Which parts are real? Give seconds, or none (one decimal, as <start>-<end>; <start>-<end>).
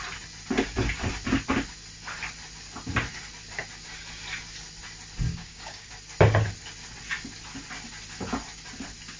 0.0-5.3; 5.9-9.2